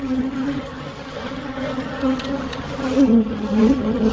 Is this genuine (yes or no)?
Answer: no